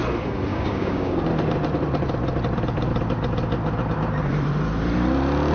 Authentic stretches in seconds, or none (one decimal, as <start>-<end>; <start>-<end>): 0.0-0.5; 1.2-5.5